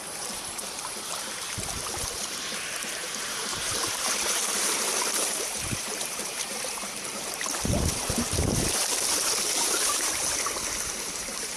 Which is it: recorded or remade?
remade